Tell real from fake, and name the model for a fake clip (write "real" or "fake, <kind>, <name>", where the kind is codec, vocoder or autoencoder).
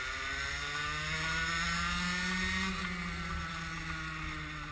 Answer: real